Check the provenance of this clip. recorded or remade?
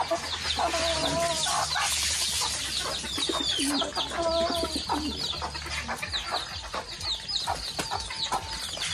recorded